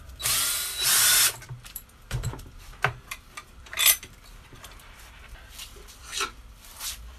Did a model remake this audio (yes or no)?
yes